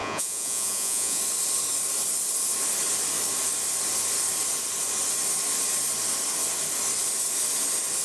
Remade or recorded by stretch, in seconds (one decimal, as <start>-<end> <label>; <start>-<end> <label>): 0.0-1.2 remade; 1.2-8.0 recorded